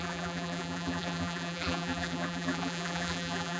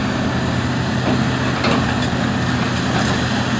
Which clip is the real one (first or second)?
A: second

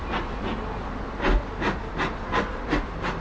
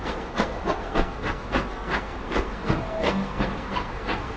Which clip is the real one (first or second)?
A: first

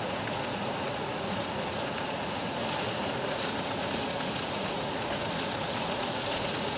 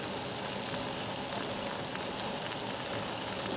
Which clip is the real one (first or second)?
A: second